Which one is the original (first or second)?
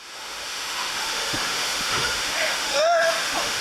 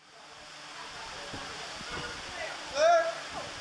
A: second